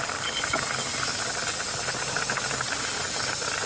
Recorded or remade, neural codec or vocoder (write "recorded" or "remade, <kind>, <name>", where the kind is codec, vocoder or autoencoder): recorded